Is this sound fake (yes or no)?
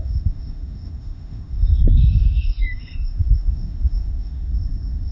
yes